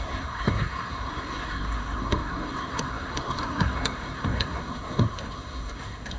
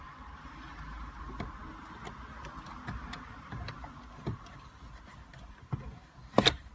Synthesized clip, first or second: first